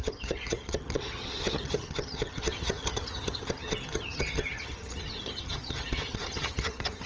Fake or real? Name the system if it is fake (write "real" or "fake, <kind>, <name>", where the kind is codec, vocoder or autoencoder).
fake, vocoder, HiFi-GAN